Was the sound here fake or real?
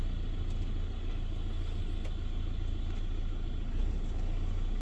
real